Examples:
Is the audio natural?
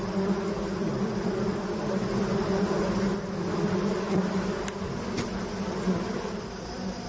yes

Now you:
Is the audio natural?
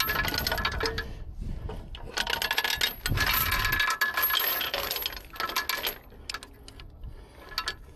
yes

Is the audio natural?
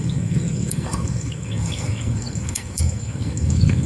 no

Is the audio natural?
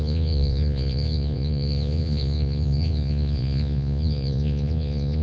no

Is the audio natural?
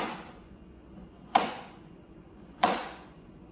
no